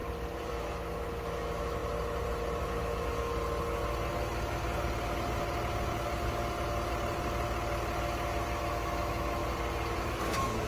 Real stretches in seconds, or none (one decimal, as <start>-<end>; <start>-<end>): 0.0-0.5; 1.8-2.6; 3.3-8.6; 9.4-10.1